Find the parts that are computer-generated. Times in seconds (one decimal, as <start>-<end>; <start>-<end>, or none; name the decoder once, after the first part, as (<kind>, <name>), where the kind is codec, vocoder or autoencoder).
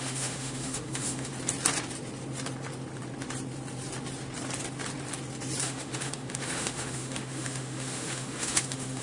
0.0-1.3 (autoencoder, DAC-VAE); 5.6-9.0